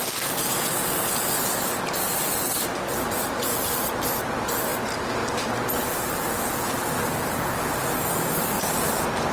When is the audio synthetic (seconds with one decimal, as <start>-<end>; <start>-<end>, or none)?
none